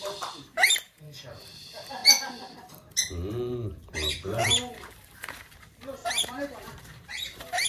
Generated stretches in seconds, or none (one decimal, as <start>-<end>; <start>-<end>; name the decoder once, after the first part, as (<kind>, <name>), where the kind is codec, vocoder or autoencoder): 0.0-2.0 (vocoder, BigVGAN v2); 3.3-4.8; 5.4-7.7